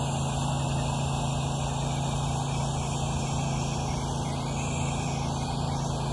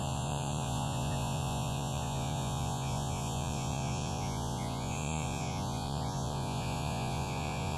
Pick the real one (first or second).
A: first